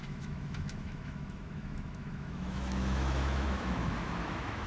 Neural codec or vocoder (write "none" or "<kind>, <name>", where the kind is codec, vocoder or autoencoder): autoencoder, DAC-VAE